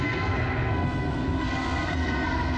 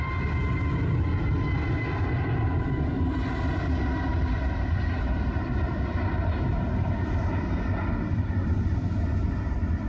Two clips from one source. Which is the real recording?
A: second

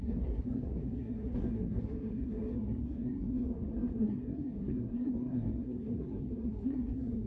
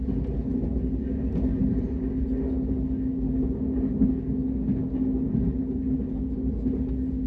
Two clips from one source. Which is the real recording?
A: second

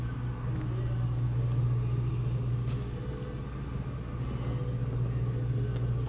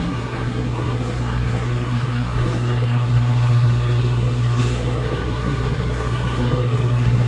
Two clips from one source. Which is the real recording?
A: first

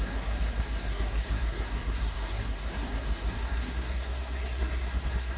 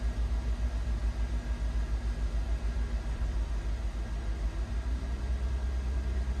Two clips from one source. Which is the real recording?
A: second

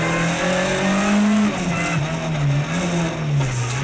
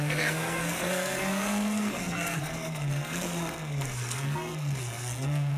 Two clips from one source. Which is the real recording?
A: first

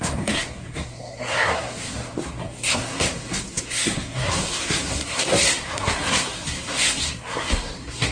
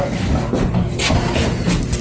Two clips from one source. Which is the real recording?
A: second